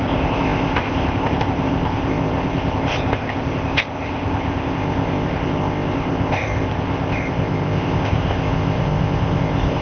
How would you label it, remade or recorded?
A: remade